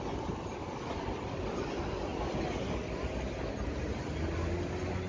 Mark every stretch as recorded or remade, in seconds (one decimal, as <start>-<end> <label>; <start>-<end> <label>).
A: 0.0-5.1 recorded